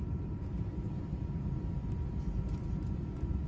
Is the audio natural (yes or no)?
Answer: no